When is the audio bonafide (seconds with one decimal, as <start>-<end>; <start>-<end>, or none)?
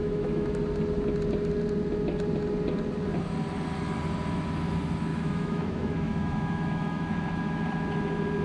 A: 0.6-5.1; 7.4-8.4